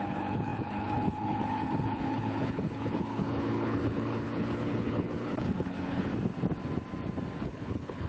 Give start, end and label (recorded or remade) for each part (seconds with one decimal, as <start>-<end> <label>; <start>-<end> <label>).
0.0-6.1 remade; 6.1-7.4 recorded; 7.4-8.1 remade